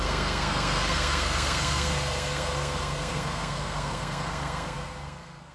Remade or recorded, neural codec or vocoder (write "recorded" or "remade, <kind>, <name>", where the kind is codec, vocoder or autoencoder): remade, codec, SNAC